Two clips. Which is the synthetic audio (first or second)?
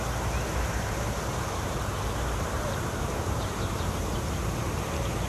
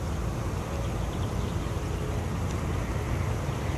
first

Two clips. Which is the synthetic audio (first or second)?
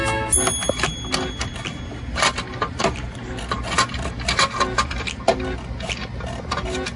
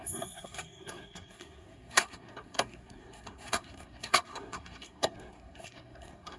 second